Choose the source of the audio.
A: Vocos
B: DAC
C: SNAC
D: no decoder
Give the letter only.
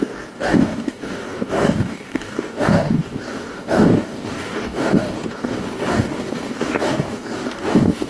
B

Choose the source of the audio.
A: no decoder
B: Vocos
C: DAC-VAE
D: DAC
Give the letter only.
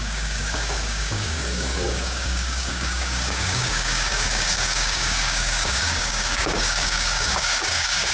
D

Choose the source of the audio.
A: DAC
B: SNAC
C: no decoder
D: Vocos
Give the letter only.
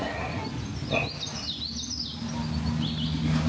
C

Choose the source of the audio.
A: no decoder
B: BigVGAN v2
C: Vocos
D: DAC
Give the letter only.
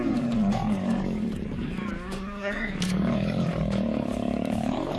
D